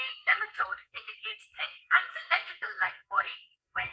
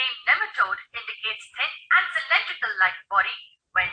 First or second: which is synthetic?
first